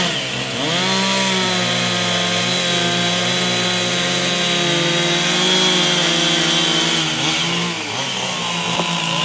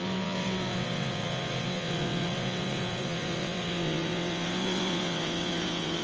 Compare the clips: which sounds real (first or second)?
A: first